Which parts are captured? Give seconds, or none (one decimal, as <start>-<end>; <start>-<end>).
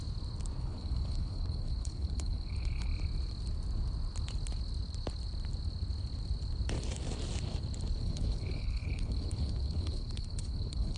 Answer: 0.0-0.6; 2.9-8.0